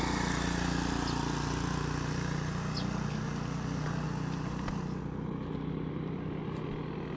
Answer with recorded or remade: recorded